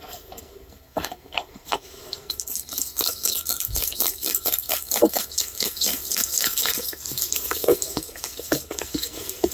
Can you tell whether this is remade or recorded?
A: remade